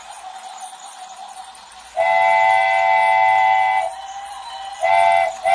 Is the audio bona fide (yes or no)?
yes